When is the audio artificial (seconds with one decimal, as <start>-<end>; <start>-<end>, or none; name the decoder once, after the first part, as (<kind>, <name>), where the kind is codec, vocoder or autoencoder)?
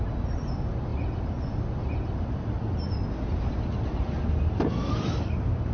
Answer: none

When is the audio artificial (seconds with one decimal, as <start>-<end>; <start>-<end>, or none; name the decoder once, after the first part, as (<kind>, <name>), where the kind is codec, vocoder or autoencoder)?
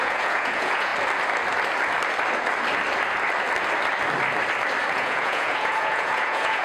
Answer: 0.0-0.9 (vocoder, Vocos); 4.9-6.6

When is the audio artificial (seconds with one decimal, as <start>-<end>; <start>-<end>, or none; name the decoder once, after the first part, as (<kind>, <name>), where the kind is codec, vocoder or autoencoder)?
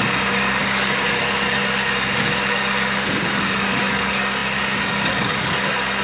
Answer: 0.0-6.0 (codec, DAC)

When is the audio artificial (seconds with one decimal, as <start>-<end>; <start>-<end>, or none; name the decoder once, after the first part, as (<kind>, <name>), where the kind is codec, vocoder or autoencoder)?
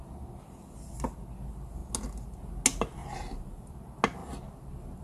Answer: 3.0-3.7 (vocoder, BigVGAN v2)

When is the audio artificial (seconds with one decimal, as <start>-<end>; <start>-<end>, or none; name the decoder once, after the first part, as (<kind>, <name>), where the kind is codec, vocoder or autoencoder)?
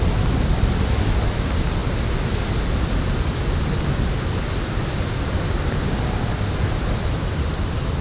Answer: none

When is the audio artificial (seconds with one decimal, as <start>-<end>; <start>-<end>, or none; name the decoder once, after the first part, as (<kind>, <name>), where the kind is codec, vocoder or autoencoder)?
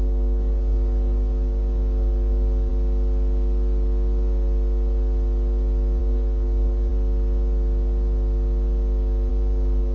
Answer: 0.0-2.7 (codec, DAC); 6.0-6.9; 9.3-9.9